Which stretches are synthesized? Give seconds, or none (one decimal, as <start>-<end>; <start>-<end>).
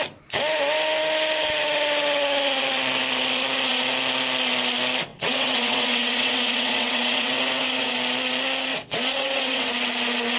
5.1-7.9; 8.7-9.7